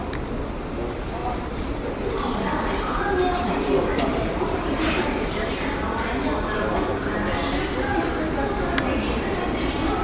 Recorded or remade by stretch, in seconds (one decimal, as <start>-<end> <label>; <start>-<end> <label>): 0.0-1.2 recorded; 1.2-5.5 remade; 5.5-10.0 recorded